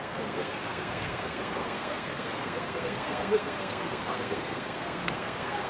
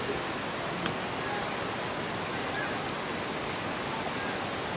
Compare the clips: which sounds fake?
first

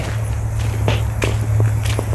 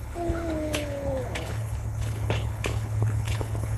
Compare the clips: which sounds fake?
second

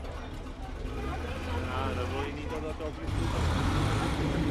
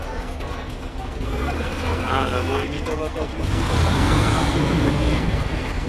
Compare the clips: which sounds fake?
second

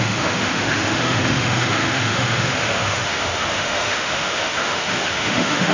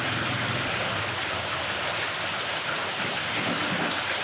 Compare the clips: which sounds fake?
first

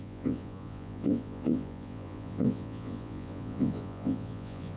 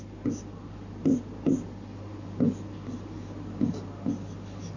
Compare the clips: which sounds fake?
first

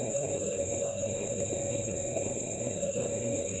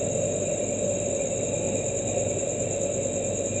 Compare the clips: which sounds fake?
first